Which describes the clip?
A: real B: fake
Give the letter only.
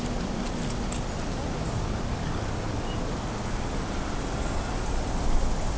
A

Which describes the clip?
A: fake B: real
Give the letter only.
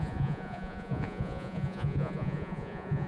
A